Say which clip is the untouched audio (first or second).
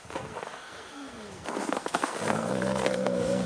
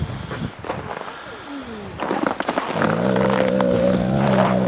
second